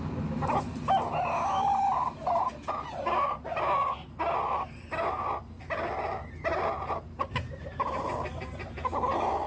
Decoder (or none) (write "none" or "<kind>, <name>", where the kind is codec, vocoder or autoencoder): none